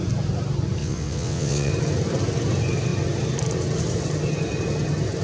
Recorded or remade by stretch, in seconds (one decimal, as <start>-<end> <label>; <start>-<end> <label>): 0.0-0.8 recorded; 0.8-1.7 remade; 1.7-5.2 recorded